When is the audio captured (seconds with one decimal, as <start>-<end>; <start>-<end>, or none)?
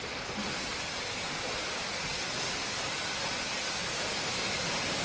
0.0-5.0